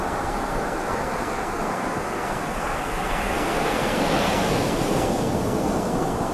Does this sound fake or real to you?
fake